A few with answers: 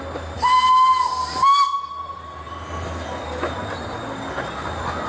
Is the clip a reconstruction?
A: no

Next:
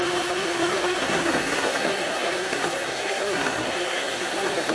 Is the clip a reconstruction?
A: yes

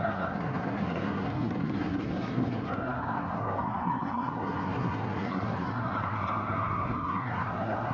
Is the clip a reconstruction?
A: yes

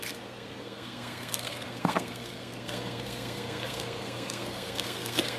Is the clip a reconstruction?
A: yes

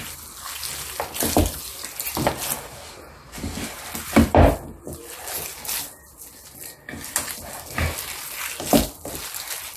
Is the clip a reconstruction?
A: no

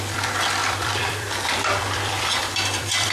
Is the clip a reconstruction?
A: yes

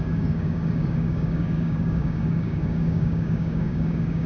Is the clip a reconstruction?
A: yes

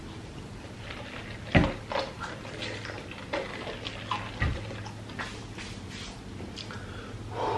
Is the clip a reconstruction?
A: no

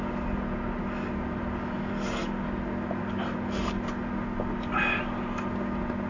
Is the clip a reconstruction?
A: no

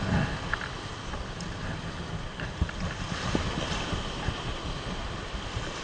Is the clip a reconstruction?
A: no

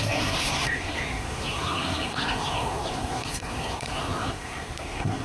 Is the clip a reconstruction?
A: yes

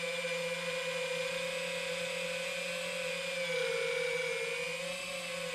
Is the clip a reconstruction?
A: no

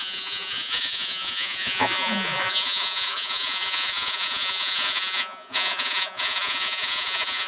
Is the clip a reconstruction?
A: yes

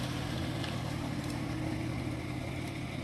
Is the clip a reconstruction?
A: no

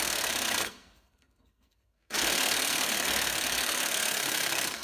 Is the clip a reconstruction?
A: yes